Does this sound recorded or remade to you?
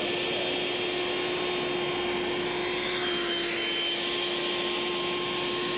recorded